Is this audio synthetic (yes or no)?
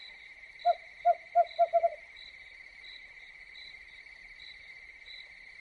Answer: yes